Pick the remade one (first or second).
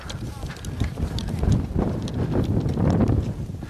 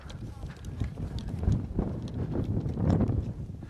second